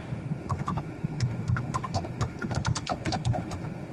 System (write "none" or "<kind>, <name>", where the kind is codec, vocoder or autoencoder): autoencoder, DAC-VAE